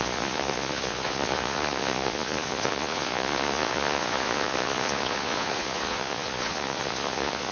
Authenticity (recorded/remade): remade